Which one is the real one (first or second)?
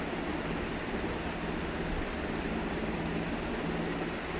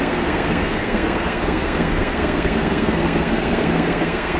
first